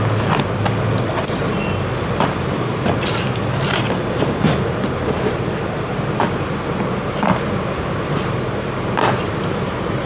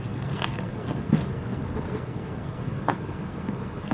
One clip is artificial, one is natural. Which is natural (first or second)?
first